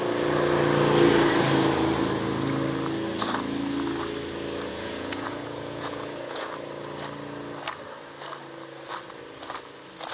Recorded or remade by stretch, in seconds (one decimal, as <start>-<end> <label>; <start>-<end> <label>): 0.0-4.7 recorded; 4.7-6.4 remade; 6.4-10.1 recorded